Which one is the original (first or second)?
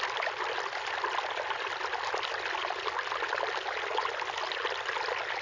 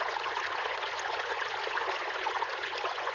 first